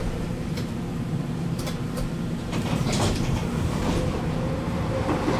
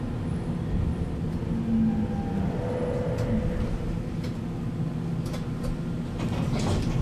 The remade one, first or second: first